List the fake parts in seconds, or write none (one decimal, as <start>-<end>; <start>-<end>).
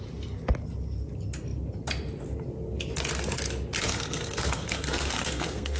3.9-5.8